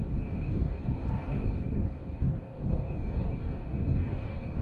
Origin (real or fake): fake